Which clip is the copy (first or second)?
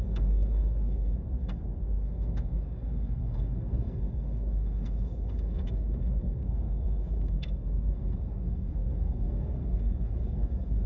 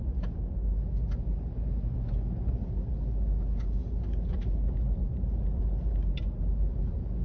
first